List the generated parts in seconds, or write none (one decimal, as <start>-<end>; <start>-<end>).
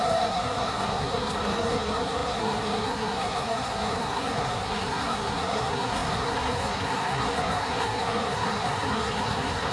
0.0-9.7